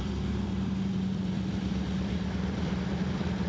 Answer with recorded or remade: remade